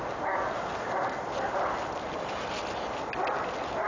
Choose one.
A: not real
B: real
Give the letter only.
B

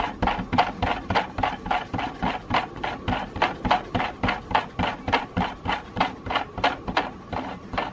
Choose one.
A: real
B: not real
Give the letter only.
A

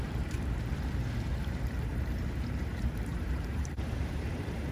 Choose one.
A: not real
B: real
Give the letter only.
A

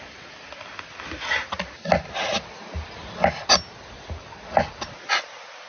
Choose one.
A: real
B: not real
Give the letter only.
A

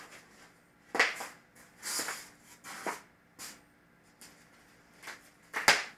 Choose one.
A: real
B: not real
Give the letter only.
A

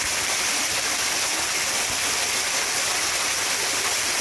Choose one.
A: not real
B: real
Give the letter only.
B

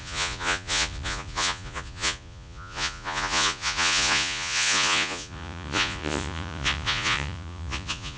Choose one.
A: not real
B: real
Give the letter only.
A